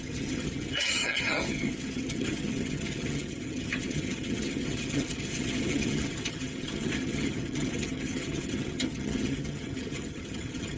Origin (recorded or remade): remade